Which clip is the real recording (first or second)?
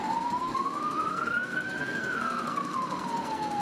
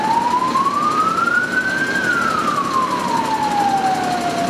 second